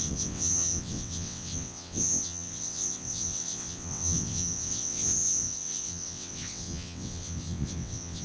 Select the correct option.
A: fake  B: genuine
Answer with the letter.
A